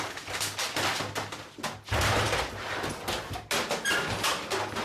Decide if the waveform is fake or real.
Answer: real